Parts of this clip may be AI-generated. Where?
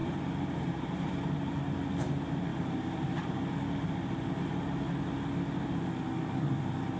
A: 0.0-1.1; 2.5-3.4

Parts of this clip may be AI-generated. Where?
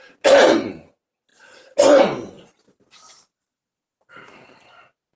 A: none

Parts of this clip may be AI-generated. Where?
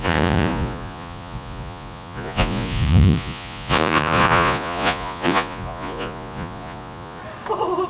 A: 0.0-7.2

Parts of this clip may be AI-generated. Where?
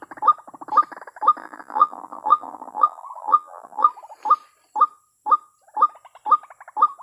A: 1.4-3.9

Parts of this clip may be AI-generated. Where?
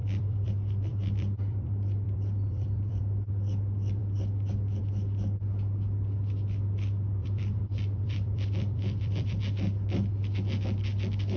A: 0.0-0.5; 0.9-3.0; 7.2-9.4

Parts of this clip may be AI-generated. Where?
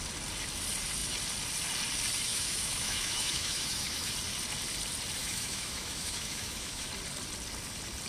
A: 2.3-4.1; 5.2-6.9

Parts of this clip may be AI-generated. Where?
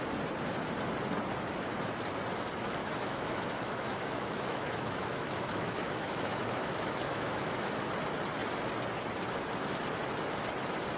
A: 2.8-7.7